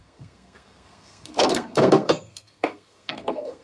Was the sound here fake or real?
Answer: fake